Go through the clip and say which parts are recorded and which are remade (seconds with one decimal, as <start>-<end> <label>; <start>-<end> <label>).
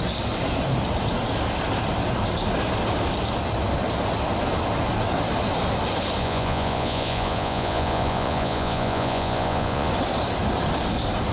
0.0-6.2 recorded; 6.2-9.9 remade; 9.9-11.3 recorded